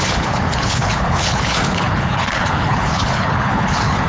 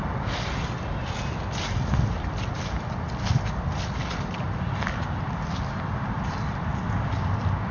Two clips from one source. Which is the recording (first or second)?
second